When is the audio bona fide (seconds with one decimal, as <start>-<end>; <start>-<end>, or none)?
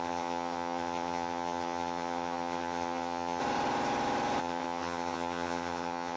3.4-4.4